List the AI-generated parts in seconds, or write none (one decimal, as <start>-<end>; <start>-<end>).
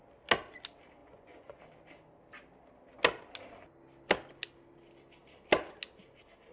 1.0-1.6